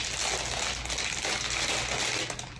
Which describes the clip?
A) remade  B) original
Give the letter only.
B